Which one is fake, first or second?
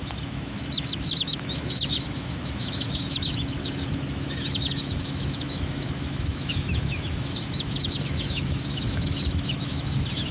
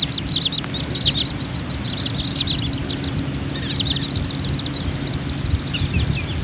first